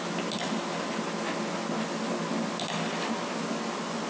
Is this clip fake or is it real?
real